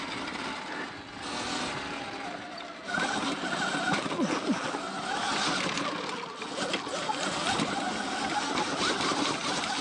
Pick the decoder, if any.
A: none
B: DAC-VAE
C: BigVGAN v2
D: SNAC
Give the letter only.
A